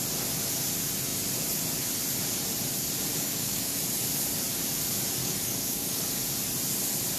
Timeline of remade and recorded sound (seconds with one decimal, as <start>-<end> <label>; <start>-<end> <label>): 0.0-3.1 recorded; 3.1-3.8 remade; 3.8-5.2 recorded; 5.2-6.0 remade; 6.0-7.2 recorded